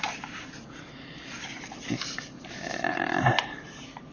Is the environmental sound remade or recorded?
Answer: remade